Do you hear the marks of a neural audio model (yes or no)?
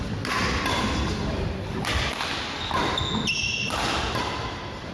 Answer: no